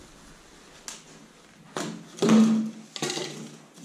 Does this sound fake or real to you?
real